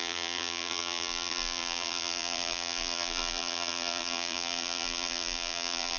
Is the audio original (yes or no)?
no